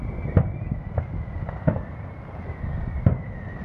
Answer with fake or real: real